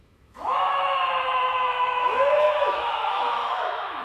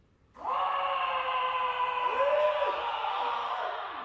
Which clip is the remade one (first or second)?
first